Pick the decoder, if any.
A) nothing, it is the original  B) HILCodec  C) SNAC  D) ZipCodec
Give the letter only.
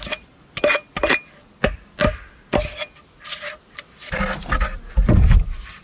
A